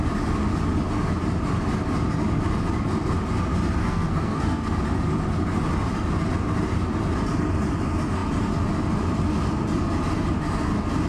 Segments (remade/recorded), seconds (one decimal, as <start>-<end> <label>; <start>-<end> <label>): 0.0-3.8 recorded; 3.8-4.8 remade; 4.8-11.1 recorded